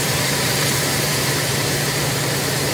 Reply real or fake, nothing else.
fake